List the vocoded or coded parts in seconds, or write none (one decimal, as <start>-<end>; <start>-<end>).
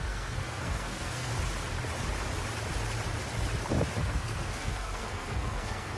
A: 0.0-1.3; 4.0-6.0